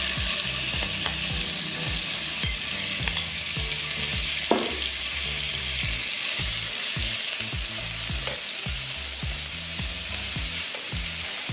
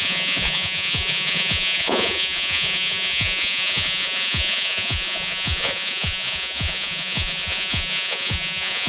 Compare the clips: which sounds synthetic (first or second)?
second